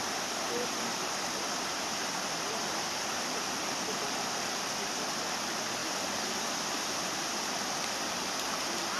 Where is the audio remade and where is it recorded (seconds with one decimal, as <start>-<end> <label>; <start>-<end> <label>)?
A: 0.0-2.6 remade; 2.6-3.6 recorded; 3.6-5.8 remade; 5.8-6.4 recorded; 6.4-9.0 remade